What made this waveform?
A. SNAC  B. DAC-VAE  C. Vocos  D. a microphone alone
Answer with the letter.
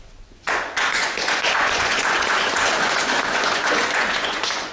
C